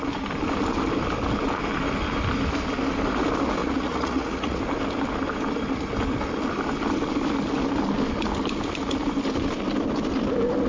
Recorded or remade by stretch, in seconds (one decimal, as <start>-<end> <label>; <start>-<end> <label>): 0.0-3.6 recorded; 3.6-4.6 remade; 4.6-10.7 recorded

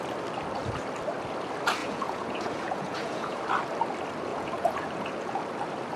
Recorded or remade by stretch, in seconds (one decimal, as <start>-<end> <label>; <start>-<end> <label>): 0.0-1.8 recorded; 1.8-3.4 remade; 3.4-4.3 recorded; 4.3-5.4 remade; 5.4-6.0 recorded

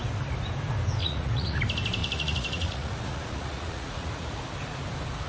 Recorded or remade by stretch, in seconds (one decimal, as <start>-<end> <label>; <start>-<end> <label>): 0.0-1.0 recorded; 1.0-1.6 remade; 1.6-2.0 recorded; 2.0-4.3 remade; 4.3-5.3 recorded